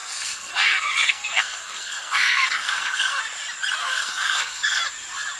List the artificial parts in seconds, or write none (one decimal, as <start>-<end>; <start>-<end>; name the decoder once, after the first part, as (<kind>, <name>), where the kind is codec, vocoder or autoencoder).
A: 0.0-3.2 (codec, SNAC); 3.8-4.8